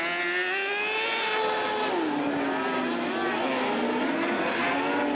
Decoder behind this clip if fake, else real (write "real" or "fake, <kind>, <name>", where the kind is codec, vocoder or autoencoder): real